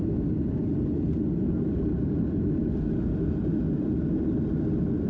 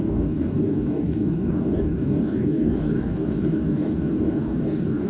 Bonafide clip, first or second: first